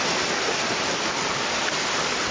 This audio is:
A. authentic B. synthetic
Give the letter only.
A